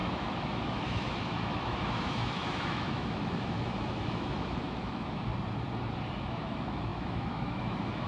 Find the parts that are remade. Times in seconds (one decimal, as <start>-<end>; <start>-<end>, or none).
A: 0.0-5.3; 6.3-8.1